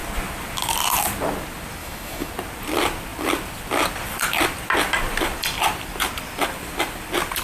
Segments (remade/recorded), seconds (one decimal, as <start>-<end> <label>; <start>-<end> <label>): 0.0-1.8 recorded; 1.8-2.3 remade; 2.3-7.4 recorded